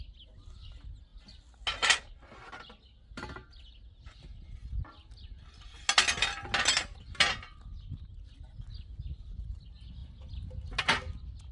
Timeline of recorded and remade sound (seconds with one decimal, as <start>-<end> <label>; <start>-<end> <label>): 0.0-11.5 recorded